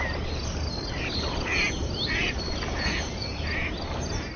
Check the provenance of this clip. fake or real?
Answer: real